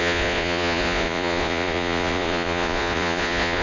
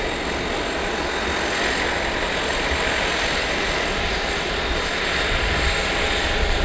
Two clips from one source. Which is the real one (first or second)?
second